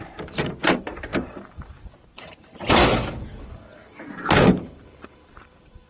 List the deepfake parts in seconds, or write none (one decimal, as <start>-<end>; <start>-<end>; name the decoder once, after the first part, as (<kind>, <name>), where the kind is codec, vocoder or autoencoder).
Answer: 0.0-5.9 (vocoder, BigVGAN v2)